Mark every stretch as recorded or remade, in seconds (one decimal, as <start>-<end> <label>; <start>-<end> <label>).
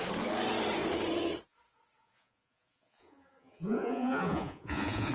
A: 0.0-2.0 recorded; 2.0-5.1 remade